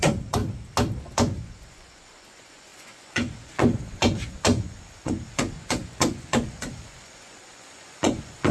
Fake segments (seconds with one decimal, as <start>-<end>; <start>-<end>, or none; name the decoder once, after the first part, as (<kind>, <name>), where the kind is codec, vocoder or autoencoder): 0.0-0.4 (vocoder, Vocos); 1.0-8.5